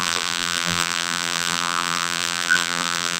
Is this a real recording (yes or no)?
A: no